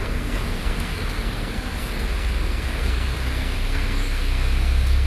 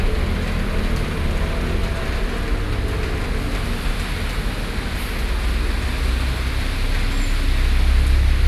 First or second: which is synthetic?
first